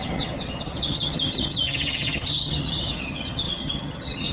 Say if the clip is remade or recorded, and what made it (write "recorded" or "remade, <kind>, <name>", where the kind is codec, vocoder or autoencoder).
remade, vocoder, HiFi-GAN